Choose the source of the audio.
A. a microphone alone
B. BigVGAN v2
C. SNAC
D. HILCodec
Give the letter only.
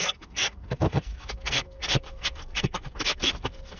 C